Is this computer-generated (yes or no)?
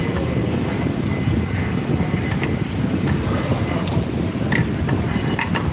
no